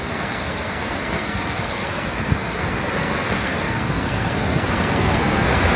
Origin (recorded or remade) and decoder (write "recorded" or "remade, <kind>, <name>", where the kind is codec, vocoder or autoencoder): remade, codec, SNAC